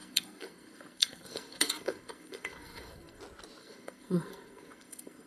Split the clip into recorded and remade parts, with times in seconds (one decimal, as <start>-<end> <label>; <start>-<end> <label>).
0.0-3.2 remade; 3.2-3.6 recorded; 3.6-5.3 remade